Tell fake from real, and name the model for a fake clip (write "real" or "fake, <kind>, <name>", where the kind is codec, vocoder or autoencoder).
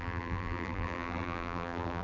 fake, vocoder, BigVGAN v2